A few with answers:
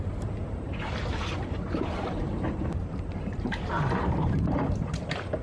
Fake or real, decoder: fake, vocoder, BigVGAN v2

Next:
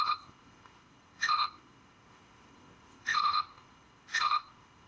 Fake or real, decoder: fake, codec, ZipCodec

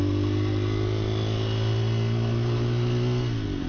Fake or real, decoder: real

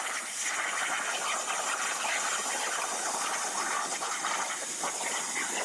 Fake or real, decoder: real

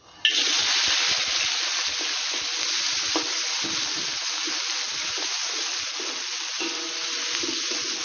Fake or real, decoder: real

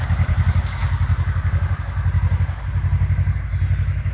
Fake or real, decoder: real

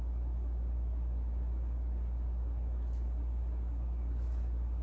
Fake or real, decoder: real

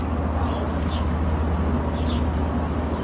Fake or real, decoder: real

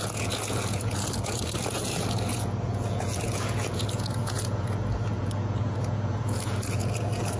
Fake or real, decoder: fake, vocoder, Vocos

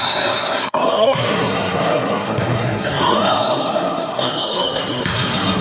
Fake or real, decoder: fake, codec, SNAC